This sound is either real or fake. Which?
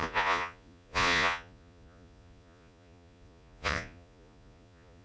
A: fake